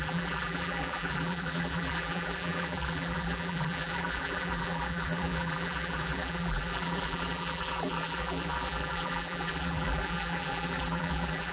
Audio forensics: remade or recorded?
remade